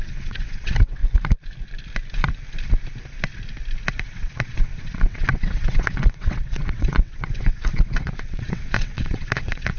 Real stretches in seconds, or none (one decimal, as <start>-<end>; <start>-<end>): 1.0-3.9